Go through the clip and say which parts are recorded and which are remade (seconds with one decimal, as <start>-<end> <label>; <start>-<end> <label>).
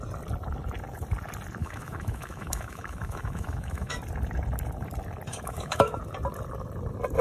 0.0-1.6 recorded; 1.6-4.0 remade; 4.0-5.3 recorded; 5.3-6.0 remade; 6.0-7.2 recorded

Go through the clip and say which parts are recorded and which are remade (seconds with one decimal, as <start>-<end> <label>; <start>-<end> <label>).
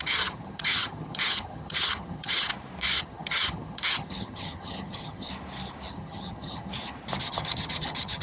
0.0-2.5 remade; 2.5-3.0 recorded; 3.0-5.3 remade; 5.3-5.9 recorded; 5.9-6.7 remade; 6.7-7.2 recorded; 7.2-8.2 remade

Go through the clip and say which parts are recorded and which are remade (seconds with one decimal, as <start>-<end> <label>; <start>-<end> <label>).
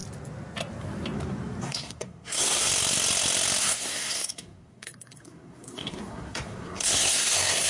0.0-1.6 recorded; 1.6-2.7 remade; 2.7-3.6 recorded; 3.6-7.7 remade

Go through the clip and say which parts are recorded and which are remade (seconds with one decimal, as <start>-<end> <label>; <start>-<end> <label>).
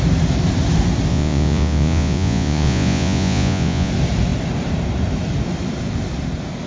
0.0-1.1 recorded; 1.1-3.9 remade; 3.9-6.7 recorded